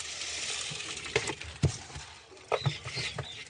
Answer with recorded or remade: recorded